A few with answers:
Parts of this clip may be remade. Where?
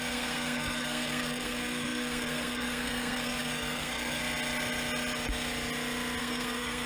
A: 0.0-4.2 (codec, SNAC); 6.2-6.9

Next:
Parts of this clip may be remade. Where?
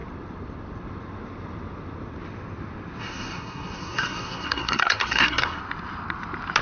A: 3.0-5.6 (codec, SNAC)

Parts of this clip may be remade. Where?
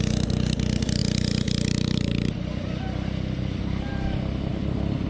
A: none